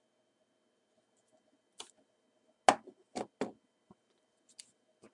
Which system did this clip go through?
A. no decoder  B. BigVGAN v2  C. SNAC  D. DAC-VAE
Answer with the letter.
A